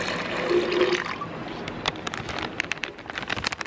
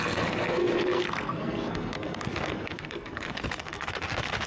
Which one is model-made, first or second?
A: second